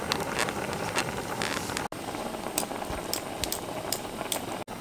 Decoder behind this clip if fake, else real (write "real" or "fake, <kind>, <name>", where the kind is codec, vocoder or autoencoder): real